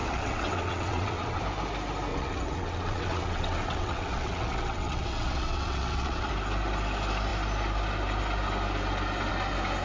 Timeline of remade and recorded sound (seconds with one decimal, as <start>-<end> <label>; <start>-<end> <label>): 0.0-1.4 remade; 1.4-2.1 recorded; 2.1-6.3 remade; 6.3-9.8 recorded